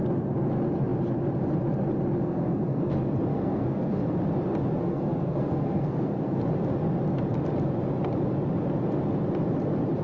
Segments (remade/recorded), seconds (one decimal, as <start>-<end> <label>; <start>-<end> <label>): 0.0-2.2 recorded; 2.2-2.9 remade; 2.9-3.3 recorded; 3.3-4.2 remade; 4.2-4.8 recorded; 4.8-6.4 remade; 6.4-10.0 recorded